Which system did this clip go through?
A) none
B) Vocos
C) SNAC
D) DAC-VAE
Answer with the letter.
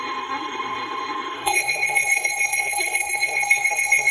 C